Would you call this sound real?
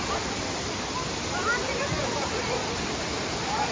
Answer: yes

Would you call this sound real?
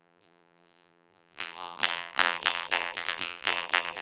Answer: no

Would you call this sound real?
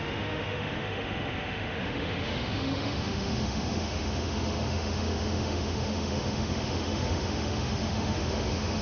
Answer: no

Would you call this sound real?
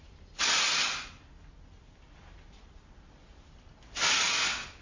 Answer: yes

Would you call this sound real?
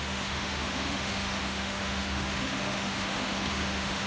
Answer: no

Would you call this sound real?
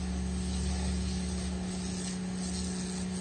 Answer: yes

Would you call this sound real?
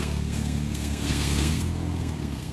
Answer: no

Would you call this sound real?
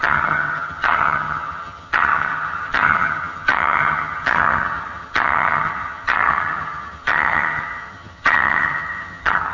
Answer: no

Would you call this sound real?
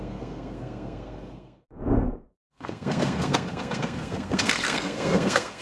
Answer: no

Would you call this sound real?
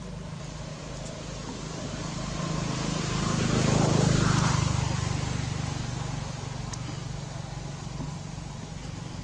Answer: yes